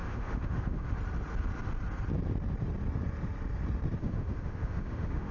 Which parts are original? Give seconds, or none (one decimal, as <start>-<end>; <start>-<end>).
0.9-4.0